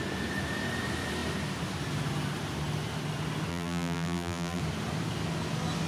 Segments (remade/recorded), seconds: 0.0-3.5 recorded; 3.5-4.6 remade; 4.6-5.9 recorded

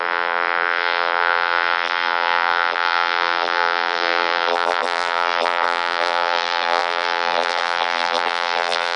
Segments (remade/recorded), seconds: 0.0-9.0 remade

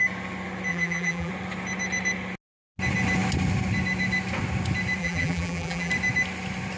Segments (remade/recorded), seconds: 0.0-0.7 recorded; 0.7-1.3 remade; 1.3-5.0 recorded; 5.0-5.9 remade; 5.9-6.8 recorded

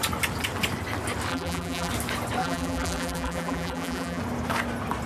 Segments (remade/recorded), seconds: 0.0-1.3 recorded; 1.3-1.9 remade; 1.9-2.4 recorded; 2.4-4.2 remade; 4.2-5.1 recorded